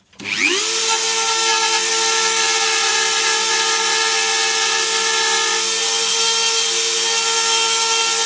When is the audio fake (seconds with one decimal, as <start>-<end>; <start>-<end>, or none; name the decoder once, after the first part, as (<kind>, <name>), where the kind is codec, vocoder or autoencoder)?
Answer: none